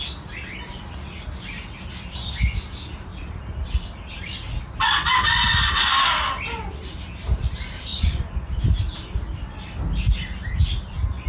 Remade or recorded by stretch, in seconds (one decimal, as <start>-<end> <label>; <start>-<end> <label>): 0.0-7.9 recorded; 7.9-8.5 remade; 8.5-11.3 recorded